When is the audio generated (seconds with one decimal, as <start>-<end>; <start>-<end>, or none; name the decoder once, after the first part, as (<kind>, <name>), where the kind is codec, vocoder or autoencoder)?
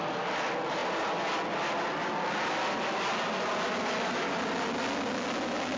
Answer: none